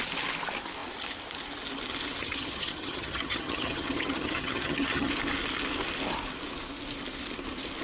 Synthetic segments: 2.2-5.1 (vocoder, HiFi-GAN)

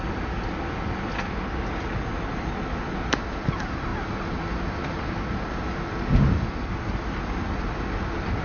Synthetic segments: none

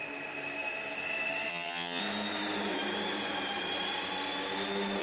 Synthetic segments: 1.5-2.0 (vocoder, HiFi-GAN)

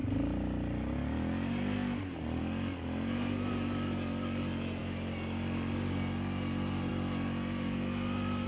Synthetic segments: none

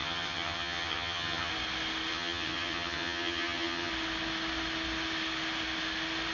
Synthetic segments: 0.0-1.5 (vocoder, HiFi-GAN); 2.1-3.9

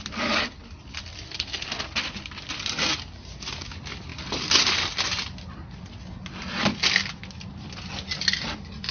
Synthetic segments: none

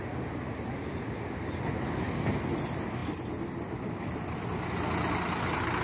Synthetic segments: none

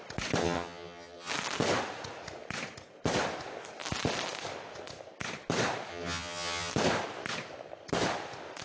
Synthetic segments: 0.4-1.3 (vocoder, HiFi-GAN); 5.9-6.7